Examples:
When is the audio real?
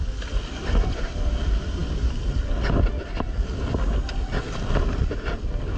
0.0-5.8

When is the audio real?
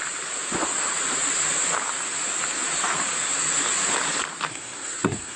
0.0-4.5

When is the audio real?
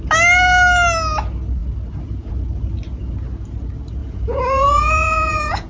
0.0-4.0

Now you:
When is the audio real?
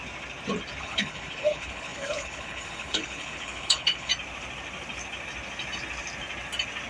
0.0-0.8; 4.1-6.9